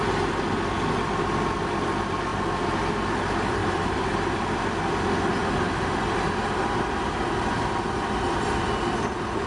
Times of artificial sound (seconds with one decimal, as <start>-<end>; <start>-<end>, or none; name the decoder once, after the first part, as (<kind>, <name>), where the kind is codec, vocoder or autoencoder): 3.6-5.0 (vocoder, BigVGAN v2)